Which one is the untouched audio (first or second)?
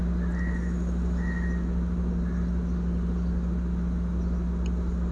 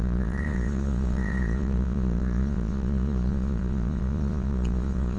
first